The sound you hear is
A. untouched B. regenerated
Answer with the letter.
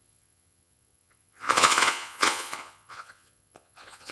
B